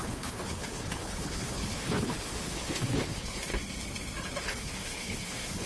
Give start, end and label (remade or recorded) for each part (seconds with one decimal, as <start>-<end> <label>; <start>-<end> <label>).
0.0-3.5 remade; 3.5-4.4 recorded; 4.4-5.7 remade